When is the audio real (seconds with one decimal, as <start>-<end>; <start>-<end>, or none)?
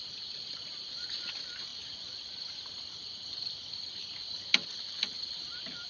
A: 0.0-5.9